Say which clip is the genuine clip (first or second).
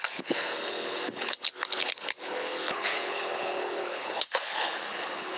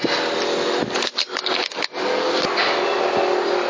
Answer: second